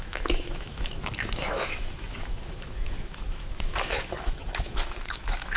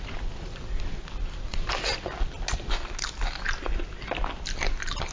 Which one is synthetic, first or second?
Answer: first